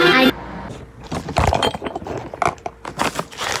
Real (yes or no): yes